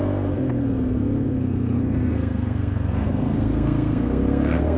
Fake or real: fake